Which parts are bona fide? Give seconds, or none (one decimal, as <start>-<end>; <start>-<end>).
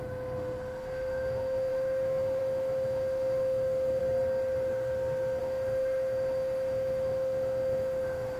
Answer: 4.0-5.4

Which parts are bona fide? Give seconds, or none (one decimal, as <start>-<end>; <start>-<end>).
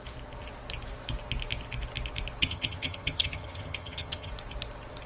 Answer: 0.0-2.4; 4.3-5.1